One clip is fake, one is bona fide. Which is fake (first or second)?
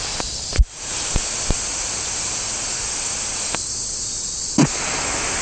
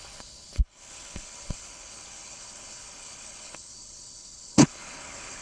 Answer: second